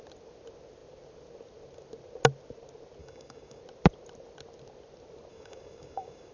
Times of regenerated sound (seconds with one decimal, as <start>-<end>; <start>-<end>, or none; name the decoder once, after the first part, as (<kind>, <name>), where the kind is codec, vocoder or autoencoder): 3.0-3.6 (codec, DAC); 5.3-6.3